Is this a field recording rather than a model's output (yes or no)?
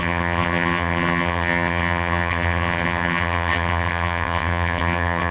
no